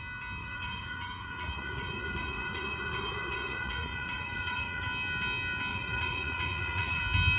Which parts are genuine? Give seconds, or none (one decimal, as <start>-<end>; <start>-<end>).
0.0-0.4; 4.8-5.7; 7.0-7.4